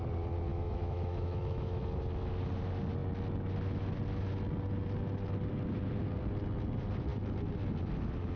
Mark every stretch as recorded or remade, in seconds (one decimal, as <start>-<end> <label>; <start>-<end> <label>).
0.0-0.5 recorded; 0.5-1.8 remade; 1.8-8.4 recorded